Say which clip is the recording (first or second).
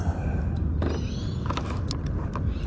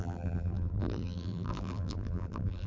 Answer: first